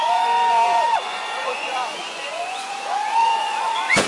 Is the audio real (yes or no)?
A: no